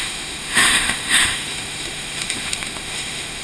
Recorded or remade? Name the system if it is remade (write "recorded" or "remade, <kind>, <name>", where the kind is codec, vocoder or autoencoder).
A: remade, autoencoder, DAC-VAE